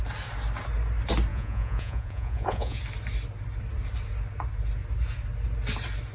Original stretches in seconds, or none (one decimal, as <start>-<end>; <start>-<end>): 0.0-1.3; 2.8-6.1